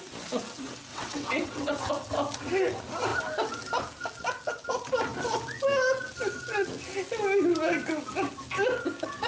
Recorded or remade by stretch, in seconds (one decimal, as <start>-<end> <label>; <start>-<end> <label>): 0.0-0.9 recorded; 0.9-1.9 remade; 1.9-9.3 recorded